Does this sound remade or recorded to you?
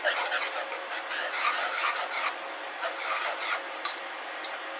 recorded